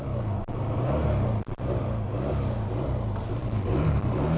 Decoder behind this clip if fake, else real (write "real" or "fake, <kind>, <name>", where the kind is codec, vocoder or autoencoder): real